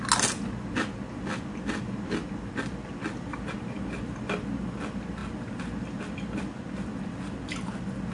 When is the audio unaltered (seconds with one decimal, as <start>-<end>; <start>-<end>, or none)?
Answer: 0.0-8.1